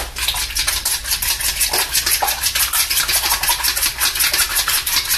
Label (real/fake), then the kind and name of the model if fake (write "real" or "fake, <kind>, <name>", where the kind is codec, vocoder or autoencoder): real